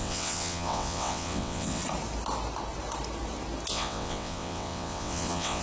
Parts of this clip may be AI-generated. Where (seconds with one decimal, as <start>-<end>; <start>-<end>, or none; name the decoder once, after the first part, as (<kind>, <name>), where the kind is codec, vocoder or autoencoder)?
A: 0.0-1.8 (vocoder, WaveNeXt); 3.7-5.6